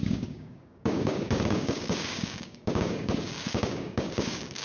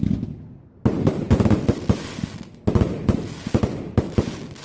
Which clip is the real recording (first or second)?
second